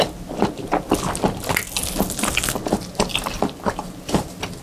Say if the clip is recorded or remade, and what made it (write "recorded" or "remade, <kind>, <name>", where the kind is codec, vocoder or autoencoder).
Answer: recorded